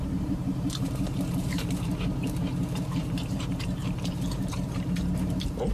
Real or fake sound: fake